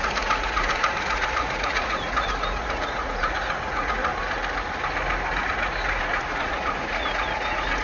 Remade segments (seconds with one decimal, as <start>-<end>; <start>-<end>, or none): 0.0-4.0; 6.0-7.8